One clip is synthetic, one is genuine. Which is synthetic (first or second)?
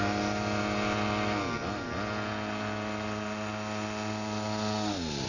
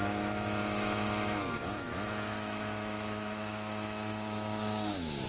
second